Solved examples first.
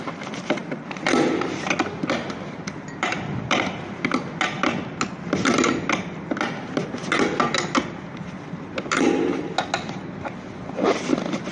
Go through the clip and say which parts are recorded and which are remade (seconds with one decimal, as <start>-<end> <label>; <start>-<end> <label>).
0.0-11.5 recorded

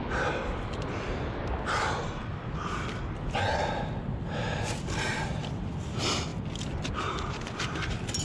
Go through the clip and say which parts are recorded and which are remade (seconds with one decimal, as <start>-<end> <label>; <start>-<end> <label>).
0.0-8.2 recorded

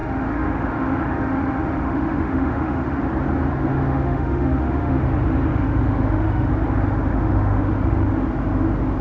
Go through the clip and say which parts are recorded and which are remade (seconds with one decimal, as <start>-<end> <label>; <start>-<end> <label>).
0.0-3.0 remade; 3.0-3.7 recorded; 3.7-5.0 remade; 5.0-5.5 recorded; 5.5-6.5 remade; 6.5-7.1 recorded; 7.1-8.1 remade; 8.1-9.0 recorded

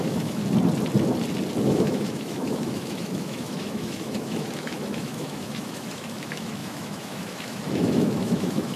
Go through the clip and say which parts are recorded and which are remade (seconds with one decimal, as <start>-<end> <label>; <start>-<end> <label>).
0.0-0.4 remade; 0.4-1.6 recorded; 1.6-8.8 remade

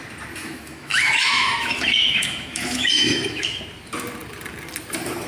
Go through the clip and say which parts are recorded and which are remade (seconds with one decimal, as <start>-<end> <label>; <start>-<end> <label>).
0.0-0.4 recorded; 0.4-3.6 remade; 3.6-5.3 recorded